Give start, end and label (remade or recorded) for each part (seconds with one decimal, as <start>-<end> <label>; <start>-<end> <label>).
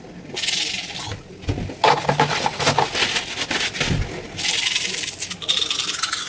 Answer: 0.0-6.3 recorded